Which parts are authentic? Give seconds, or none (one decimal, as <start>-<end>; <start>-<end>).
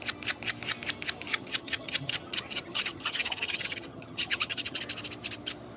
0.0-1.3; 4.8-5.8